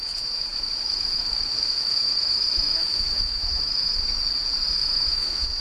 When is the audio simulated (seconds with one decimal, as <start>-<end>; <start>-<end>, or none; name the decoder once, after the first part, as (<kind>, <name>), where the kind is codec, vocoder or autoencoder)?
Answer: 0.0-4.2 (autoencoder, DAC-VAE); 4.7-5.6

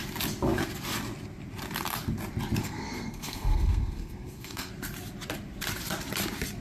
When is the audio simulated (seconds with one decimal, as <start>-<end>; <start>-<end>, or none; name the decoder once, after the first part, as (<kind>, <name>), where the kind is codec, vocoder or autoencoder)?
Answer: 2.6-4.7 (codec, SNAC)

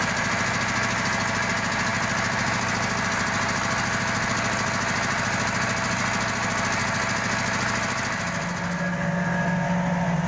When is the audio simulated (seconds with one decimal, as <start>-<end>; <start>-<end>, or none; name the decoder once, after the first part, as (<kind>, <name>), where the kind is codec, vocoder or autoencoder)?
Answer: none

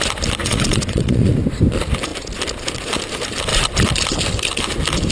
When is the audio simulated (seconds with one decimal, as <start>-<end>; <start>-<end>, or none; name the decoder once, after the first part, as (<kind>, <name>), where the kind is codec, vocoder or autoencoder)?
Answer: 0.4-1.3 (vocoder, WaveNeXt)

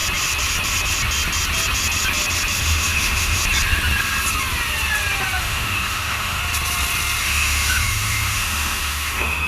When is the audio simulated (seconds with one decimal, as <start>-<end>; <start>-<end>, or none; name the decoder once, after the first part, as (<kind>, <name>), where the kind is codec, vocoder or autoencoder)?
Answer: 2.6-3.4 (autoencoder, DAC-VAE); 5.4-6.4; 7.2-9.5

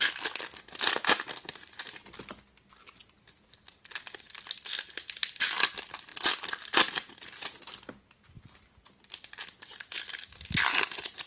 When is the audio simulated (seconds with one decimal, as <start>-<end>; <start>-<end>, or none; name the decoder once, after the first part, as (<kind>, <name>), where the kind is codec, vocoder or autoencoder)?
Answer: none

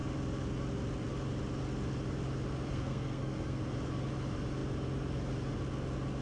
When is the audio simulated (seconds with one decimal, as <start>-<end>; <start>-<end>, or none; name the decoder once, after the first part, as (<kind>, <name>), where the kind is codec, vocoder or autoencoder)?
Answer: 2.7-3.6 (codec, SNAC)